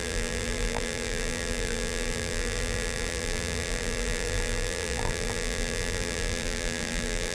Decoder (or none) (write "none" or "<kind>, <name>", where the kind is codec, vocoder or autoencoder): vocoder, BigVGAN v2